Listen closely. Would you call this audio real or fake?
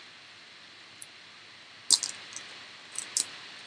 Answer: real